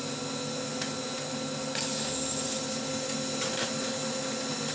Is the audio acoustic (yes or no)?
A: yes